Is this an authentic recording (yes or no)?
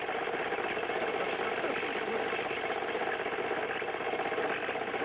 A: no